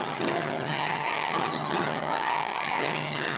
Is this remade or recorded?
remade